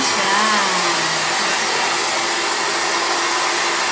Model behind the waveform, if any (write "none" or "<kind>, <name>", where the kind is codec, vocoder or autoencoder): none